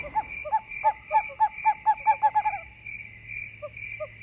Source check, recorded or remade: recorded